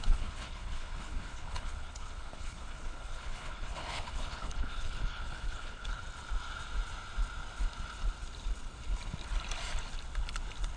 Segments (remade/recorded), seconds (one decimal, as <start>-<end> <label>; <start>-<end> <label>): 0.0-6.0 remade; 6.0-10.8 recorded